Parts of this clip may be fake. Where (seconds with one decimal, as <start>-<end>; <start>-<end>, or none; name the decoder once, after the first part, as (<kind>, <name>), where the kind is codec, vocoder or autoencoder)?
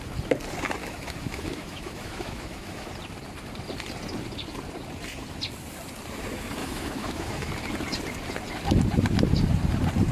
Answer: 0.8-2.9 (autoencoder, DAC-VAE); 6.6-7.5